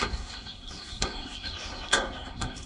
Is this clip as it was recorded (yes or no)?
no